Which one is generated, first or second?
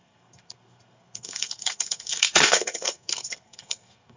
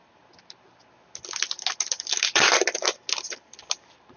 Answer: first